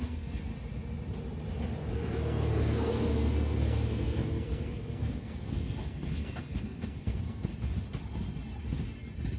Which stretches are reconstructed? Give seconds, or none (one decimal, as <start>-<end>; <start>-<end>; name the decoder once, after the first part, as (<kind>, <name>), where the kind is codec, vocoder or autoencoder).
0.0-0.5 (codec, SNAC); 1.9-7.5